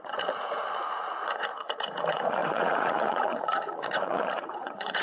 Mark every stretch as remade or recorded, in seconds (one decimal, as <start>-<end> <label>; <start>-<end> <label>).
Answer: 0.0-5.0 remade